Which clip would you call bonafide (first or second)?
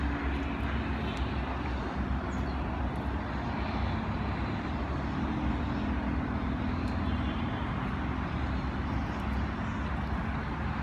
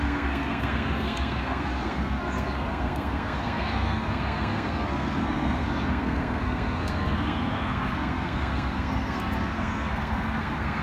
first